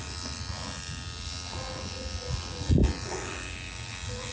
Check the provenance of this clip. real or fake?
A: real